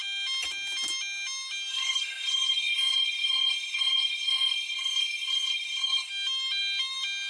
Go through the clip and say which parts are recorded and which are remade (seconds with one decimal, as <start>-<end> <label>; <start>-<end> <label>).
0.0-1.7 recorded; 1.7-6.1 remade; 6.1-7.3 recorded